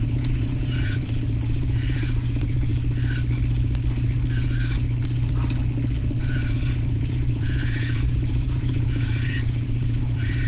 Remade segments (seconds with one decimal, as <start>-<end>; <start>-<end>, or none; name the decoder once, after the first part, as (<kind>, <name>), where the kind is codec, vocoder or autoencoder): 0.0-2.7 (vocoder, Vocos); 6.2-10.5